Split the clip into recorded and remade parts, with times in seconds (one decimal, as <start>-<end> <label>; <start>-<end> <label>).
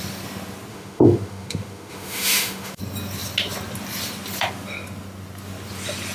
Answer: 0.0-0.7 recorded; 0.7-2.8 remade; 2.8-6.1 recorded